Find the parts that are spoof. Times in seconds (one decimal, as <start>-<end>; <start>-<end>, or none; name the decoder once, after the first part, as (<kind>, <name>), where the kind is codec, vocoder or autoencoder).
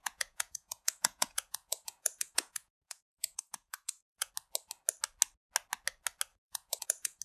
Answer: 0.0-4.3 (vocoder, Vocos); 6.3-7.2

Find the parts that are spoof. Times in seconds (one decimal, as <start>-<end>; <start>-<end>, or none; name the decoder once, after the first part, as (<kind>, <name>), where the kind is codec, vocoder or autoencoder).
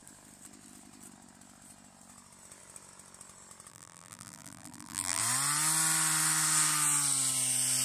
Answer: 3.7-5.2 (vocoder, BigVGAN v2)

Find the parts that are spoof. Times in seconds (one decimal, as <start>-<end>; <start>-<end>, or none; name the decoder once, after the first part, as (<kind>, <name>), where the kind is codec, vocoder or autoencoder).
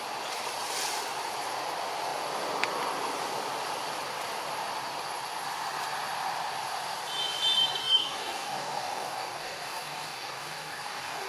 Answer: 7.8-11.3 (codec, DAC)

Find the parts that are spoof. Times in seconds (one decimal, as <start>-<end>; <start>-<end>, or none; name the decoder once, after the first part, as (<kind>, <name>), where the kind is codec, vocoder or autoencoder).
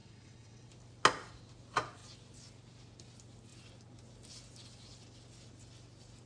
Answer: 0.0-0.7 (vocoder, WaveNeXt)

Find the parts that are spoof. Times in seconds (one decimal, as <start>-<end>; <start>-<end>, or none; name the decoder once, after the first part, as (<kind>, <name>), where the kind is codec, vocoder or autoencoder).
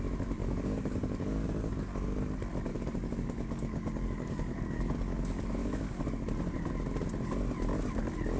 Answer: 0.4-2.2 (codec, DAC); 2.7-6.0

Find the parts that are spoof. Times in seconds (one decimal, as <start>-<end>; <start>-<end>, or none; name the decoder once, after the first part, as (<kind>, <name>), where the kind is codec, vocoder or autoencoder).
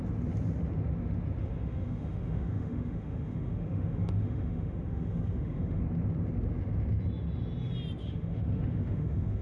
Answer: 1.4-5.8 (autoencoder, DAC-VAE); 8.0-9.4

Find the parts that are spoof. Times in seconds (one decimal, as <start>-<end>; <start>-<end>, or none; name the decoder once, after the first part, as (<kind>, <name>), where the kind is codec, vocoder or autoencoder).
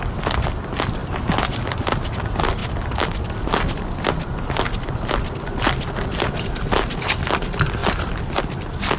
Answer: 2.6-4.4 (vocoder, BigVGAN v2); 7.8-8.4